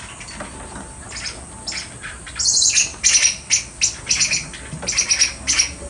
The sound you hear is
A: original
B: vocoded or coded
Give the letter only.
A